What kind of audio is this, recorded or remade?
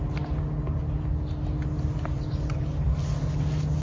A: recorded